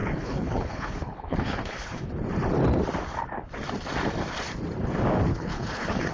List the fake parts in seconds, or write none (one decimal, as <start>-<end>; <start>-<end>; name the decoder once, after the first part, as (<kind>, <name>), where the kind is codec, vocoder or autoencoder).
0.0-2.1 (codec, HILCodec); 5.3-6.1